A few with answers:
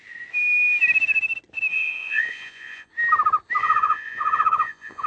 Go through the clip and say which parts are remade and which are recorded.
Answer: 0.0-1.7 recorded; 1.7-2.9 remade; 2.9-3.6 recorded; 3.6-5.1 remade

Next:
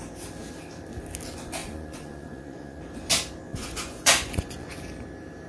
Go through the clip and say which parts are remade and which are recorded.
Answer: 0.0-1.6 recorded; 1.6-2.8 remade; 2.8-3.5 recorded; 3.5-4.8 remade; 4.8-5.5 recorded

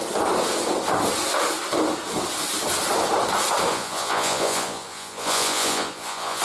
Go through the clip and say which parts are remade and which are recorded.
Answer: 0.0-3.7 recorded; 3.7-6.4 remade

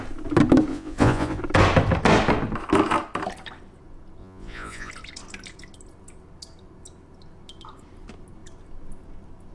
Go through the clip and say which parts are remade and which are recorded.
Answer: 0.0-0.7 recorded; 0.7-1.4 remade; 1.4-4.2 recorded; 4.2-4.9 remade; 4.9-9.5 recorded

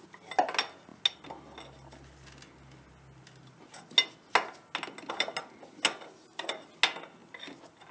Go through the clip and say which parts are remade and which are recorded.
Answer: 0.0-7.9 recorded

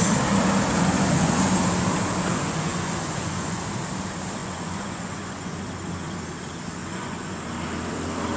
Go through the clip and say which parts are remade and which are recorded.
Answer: 0.0-0.7 recorded; 0.7-1.5 remade; 1.5-2.3 recorded; 2.3-3.6 remade; 3.6-4.4 recorded; 4.4-5.5 remade; 5.5-6.8 recorded; 6.8-7.4 remade; 7.4-8.4 recorded